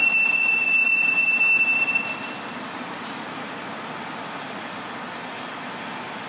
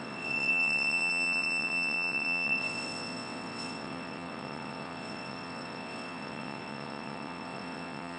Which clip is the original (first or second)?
first